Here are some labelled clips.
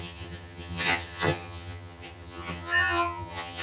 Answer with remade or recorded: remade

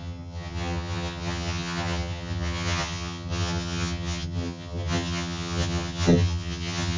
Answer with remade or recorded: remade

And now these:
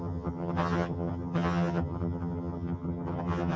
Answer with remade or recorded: remade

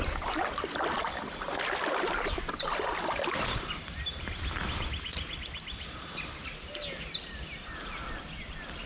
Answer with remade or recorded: recorded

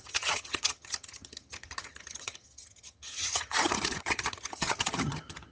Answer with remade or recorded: remade